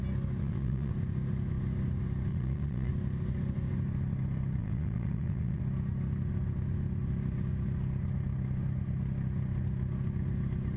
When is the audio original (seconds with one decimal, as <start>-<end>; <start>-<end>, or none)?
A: 0.0-0.4; 0.9-2.3; 2.9-4.6; 5.6-10.8